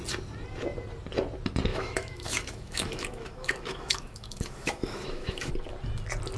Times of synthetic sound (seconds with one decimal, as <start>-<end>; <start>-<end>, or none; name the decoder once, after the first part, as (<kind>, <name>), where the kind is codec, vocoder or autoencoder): 1.7-5.5 (autoencoder, DAC-VAE)